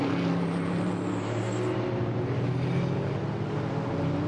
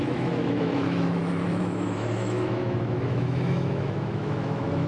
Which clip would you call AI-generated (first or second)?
second